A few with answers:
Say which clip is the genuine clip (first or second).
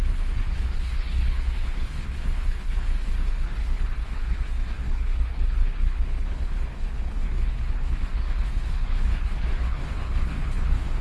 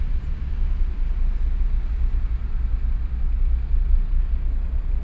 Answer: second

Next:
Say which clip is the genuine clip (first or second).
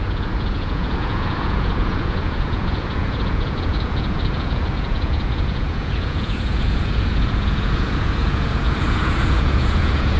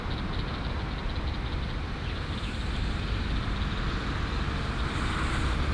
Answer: second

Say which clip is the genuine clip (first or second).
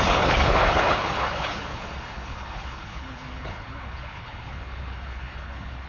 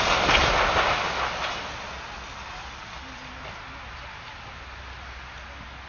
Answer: second